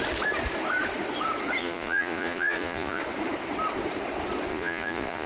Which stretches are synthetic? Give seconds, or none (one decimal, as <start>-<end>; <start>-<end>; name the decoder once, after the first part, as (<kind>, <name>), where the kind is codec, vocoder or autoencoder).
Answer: 1.6-3.0 (vocoder, Vocos); 4.5-5.3